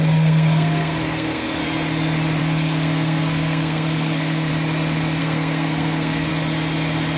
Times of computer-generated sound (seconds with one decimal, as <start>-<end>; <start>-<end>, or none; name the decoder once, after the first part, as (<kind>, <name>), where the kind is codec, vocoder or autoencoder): 0.0-1.6 (codec, SNAC); 2.4-4.5; 5.2-6.3